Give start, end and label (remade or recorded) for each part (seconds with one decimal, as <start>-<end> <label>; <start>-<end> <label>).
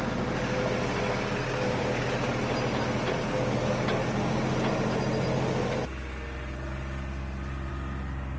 0.0-8.4 recorded